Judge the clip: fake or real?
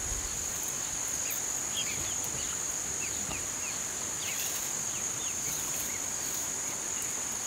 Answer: real